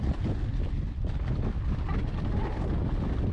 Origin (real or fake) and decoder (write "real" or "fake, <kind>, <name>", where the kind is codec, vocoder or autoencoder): real